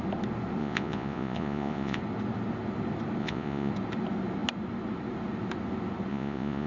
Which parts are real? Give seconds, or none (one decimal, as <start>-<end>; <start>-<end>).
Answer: 0.0-0.6; 2.0-3.2; 3.7-6.1